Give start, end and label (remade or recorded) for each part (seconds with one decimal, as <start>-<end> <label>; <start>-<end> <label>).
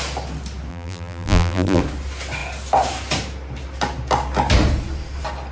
0.0-0.7 recorded; 0.7-1.8 remade; 1.8-5.5 recorded